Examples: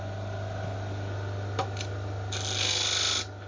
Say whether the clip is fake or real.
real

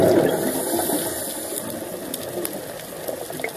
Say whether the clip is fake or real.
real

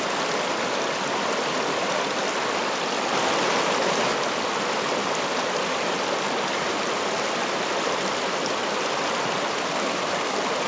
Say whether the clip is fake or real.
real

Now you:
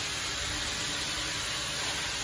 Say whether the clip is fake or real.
real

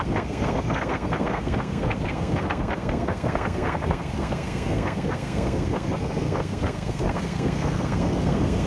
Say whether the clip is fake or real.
fake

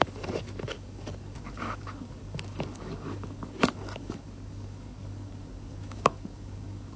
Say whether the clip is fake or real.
fake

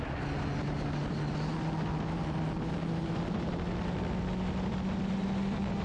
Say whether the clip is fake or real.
real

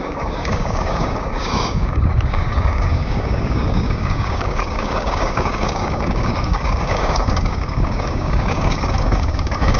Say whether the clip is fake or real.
fake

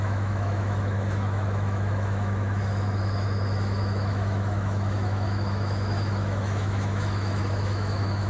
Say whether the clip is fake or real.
fake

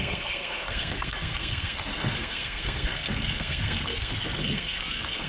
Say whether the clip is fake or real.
fake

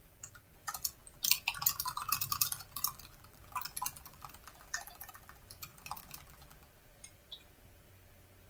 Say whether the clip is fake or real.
fake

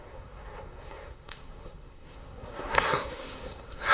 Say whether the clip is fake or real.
fake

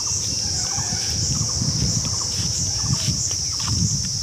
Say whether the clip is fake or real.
fake